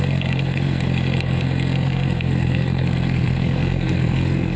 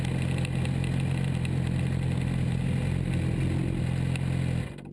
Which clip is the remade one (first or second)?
first